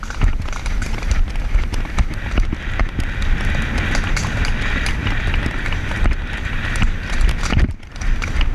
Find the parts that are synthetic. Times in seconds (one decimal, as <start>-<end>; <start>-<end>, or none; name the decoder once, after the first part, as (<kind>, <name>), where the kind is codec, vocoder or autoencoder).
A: 5.0-7.3 (vocoder, BigVGAN v2)